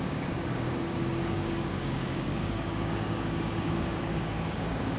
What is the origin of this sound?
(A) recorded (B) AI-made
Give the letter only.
B